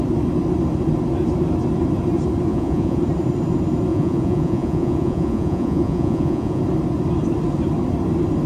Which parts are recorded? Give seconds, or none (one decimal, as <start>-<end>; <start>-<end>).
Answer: 0.0-2.5; 3.0-3.9; 6.6-8.5